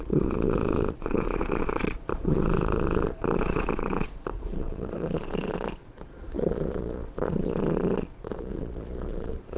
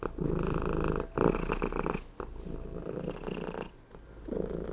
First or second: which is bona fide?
second